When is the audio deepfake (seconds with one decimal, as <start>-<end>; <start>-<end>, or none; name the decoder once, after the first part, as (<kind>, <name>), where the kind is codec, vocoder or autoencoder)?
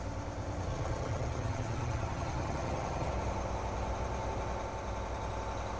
0.7-3.1 (vocoder, HiFi-GAN)